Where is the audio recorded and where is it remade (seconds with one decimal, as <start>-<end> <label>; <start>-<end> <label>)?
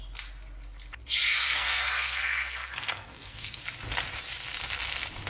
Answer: 0.0-1.3 recorded; 1.3-3.6 remade; 3.6-5.3 recorded